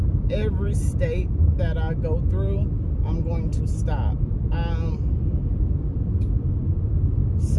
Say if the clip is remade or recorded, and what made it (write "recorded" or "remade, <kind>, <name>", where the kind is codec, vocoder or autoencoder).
recorded